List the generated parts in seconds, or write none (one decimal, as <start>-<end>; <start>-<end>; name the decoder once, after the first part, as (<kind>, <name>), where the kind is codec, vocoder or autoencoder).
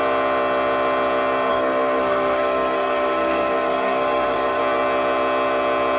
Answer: 1.5-4.6 (codec, SNAC)